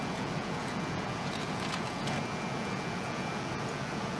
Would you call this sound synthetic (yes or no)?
yes